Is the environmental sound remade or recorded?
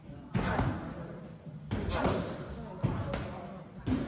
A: recorded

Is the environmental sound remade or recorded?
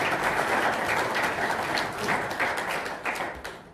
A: recorded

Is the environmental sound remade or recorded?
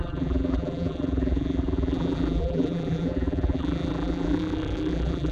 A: remade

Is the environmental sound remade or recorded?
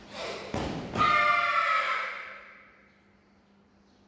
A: recorded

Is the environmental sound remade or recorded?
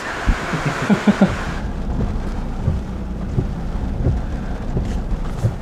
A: remade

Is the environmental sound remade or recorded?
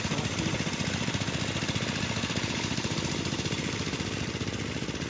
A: recorded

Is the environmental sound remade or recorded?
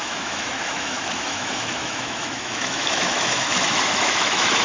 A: remade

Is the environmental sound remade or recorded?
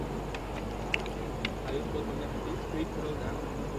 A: remade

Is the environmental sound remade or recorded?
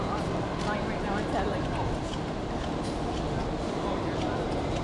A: recorded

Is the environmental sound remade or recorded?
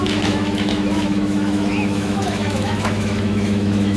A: remade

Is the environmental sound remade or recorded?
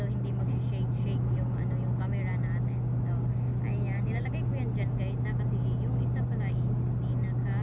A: recorded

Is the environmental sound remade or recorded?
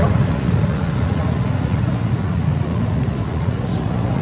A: remade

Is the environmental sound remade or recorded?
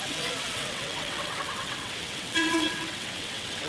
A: remade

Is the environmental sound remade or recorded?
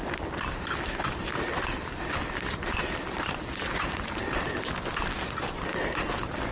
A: recorded